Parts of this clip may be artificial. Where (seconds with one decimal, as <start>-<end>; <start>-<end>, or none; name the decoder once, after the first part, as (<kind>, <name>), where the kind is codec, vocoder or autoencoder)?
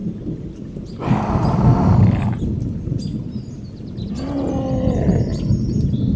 none